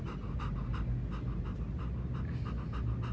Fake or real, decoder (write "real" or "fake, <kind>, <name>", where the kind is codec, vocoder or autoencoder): real